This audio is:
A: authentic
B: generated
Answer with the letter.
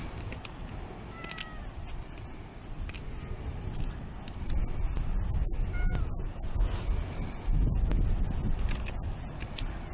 A